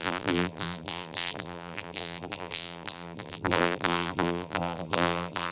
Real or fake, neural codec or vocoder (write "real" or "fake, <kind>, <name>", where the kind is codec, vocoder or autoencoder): fake, vocoder, BigVGAN v2